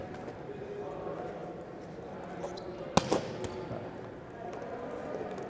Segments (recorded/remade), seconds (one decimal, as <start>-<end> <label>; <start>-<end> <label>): 0.0-5.5 recorded